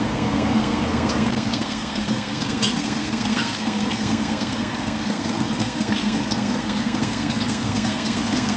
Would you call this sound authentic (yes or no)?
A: no